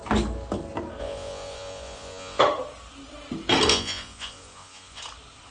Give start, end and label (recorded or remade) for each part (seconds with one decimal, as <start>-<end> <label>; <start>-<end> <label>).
0.0-1.0 recorded; 1.0-2.4 remade; 2.4-3.7 recorded; 3.7-5.0 remade; 5.0-5.5 recorded